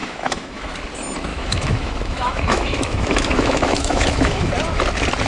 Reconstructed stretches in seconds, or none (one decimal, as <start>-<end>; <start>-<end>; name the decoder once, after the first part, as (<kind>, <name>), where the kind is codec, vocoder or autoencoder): 0.0-0.7 (autoencoder, DAC-VAE); 1.3-4.5